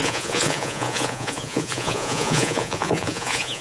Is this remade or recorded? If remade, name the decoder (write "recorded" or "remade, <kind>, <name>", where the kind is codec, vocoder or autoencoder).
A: remade, vocoder, Vocos